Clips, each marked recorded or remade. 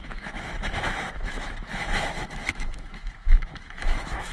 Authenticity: remade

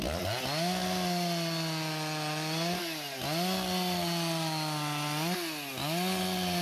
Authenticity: recorded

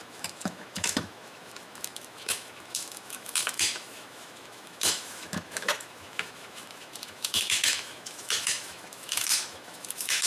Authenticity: remade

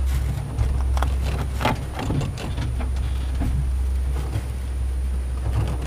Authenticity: recorded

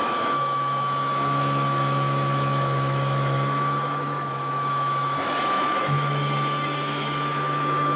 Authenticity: remade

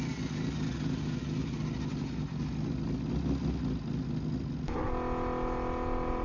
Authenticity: recorded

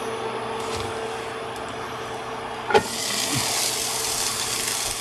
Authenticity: recorded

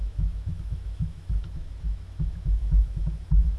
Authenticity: remade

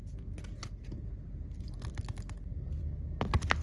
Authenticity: recorded